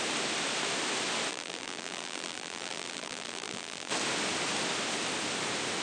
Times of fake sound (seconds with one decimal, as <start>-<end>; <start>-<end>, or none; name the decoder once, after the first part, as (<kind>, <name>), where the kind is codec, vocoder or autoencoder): 1.3-3.9 (vocoder, BigVGAN v2)